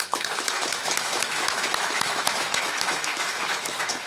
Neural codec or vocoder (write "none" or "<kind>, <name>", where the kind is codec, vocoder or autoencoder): autoencoder, DAC-VAE